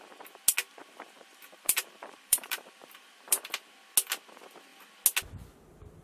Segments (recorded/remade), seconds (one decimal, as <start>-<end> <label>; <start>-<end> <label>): 0.0-0.8 recorded; 0.8-3.4 remade; 3.4-6.0 recorded